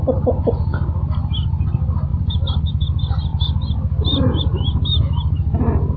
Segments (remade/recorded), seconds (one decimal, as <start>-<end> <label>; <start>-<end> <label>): 0.0-2.1 recorded; 2.1-2.7 remade; 2.7-6.0 recorded

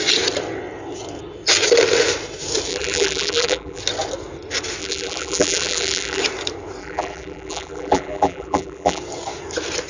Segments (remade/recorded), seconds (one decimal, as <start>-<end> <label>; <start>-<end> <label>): 0.0-2.7 recorded; 2.7-3.8 remade; 3.8-4.8 recorded; 4.8-6.2 remade; 6.2-6.8 recorded; 6.8-9.0 remade; 9.0-9.9 recorded

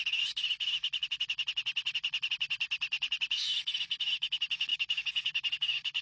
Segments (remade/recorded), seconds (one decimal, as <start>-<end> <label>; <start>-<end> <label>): 0.0-4.7 recorded; 4.7-6.0 remade

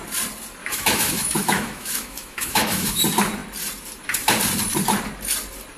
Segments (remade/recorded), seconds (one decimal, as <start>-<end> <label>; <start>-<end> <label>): 0.0-0.6 recorded; 0.6-3.0 remade; 3.0-5.8 recorded

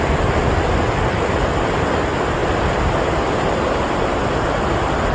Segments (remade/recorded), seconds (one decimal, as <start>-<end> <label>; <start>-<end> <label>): 0.0-5.1 recorded

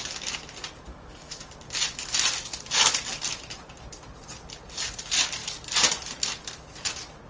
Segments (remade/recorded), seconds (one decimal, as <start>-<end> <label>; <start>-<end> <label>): 0.0-0.9 recorded; 0.9-1.5 remade; 1.5-7.3 recorded

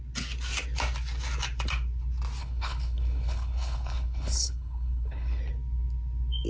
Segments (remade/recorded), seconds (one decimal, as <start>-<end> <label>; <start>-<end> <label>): 0.0-2.4 recorded; 2.4-5.4 remade; 5.4-6.5 recorded